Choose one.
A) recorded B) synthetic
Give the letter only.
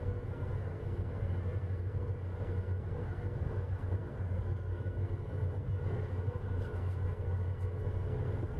B